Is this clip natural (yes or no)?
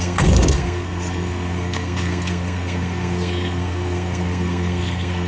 no